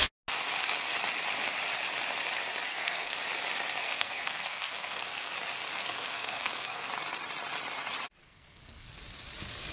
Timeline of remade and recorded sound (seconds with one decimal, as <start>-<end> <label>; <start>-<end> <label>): 0.0-2.7 recorded; 2.7-3.2 remade; 3.2-3.8 recorded; 3.8-5.3 remade; 5.3-5.7 recorded; 5.7-6.9 remade; 6.9-8.2 recorded; 8.2-8.9 remade; 8.9-9.7 recorded